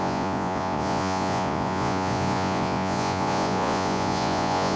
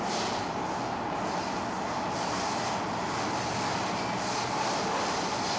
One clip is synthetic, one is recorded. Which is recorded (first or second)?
second